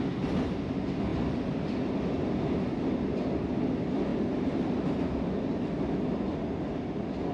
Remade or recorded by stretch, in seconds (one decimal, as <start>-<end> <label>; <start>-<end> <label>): 0.0-7.3 recorded